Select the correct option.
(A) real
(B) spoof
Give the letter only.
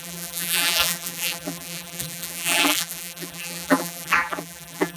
B